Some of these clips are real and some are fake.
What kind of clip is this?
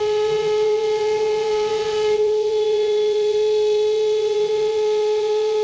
fake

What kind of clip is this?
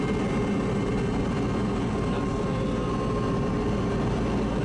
real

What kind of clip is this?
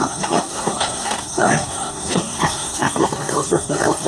fake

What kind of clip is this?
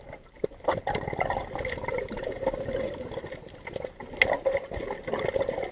real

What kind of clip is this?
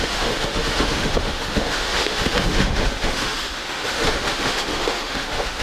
fake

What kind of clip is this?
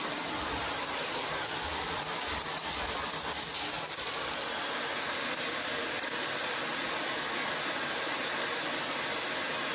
real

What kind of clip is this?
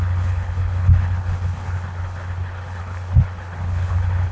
fake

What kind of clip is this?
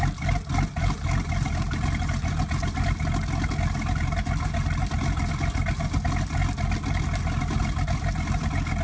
real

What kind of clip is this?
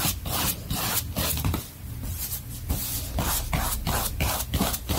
real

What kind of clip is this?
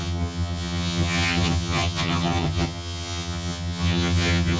fake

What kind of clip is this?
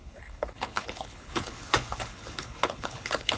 fake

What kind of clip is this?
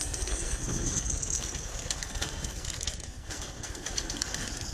fake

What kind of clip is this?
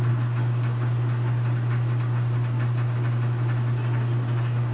real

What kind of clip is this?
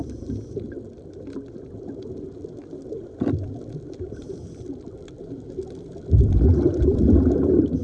fake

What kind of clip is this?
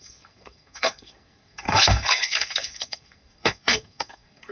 fake